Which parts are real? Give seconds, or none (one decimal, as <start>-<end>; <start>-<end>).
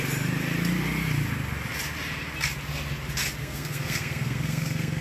0.0-3.4